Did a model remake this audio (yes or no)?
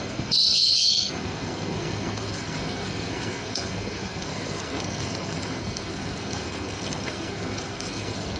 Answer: yes